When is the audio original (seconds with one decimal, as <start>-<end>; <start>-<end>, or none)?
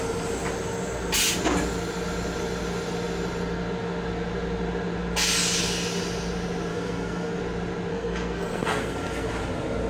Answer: 0.0-6.7; 7.4-7.9; 9.3-9.9